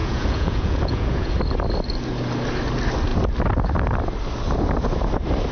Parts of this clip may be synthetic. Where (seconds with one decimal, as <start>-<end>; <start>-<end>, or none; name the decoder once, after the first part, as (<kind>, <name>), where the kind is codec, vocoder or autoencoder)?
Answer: 0.0-1.3 (vocoder, Vocos)